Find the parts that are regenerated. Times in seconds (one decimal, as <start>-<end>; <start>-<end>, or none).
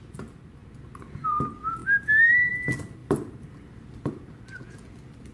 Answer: 3.0-4.6